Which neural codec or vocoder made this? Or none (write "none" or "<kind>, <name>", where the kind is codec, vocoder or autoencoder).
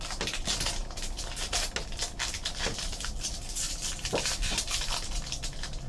none